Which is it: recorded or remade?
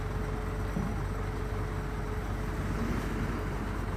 recorded